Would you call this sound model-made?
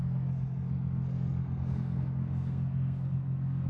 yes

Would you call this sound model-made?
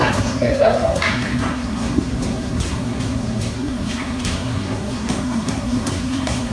yes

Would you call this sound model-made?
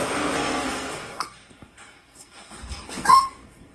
yes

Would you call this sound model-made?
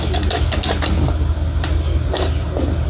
no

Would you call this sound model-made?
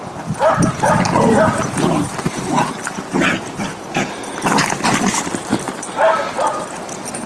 no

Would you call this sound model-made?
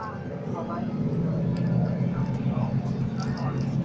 no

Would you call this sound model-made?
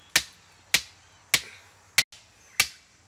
no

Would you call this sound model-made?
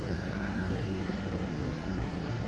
yes